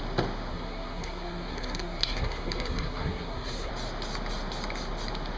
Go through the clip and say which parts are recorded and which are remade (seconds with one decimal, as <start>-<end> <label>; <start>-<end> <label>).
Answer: 0.0-0.5 recorded; 0.5-3.7 remade; 3.7-5.4 recorded